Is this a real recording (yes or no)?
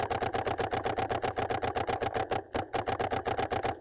yes